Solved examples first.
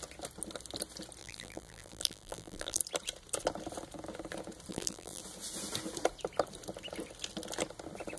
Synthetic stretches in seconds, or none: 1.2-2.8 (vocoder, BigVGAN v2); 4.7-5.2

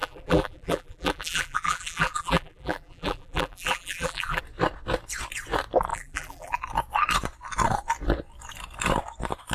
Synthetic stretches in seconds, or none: 0.0-4.4 (vocoder, BigVGAN v2); 5.9-6.6

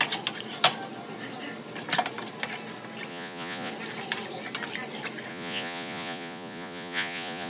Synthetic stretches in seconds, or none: 3.1-3.7 (vocoder, Vocos); 5.3-7.5

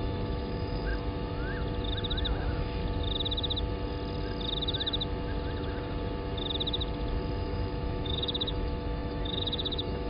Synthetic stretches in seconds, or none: 0.0-0.9 (autoencoder, DAC-VAE); 2.4-2.8; 7.4-10.1

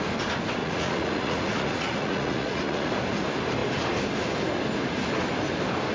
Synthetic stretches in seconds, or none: 0.6-2.9 (vocoder, Vocos)